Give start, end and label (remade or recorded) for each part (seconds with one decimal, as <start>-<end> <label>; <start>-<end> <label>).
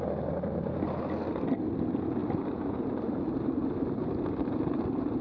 0.0-2.2 recorded; 2.2-5.2 remade